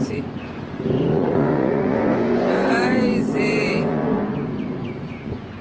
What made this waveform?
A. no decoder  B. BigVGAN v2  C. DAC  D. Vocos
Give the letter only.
D